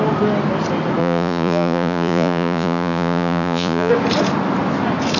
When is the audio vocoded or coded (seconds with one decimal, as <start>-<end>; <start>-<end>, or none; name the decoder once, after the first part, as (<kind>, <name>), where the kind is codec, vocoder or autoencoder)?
1.0-3.9 (vocoder, Vocos)